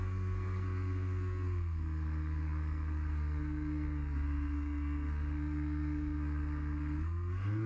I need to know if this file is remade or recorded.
remade